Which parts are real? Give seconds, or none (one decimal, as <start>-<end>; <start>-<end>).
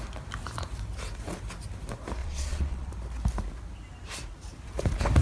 0.0-2.2; 2.9-5.2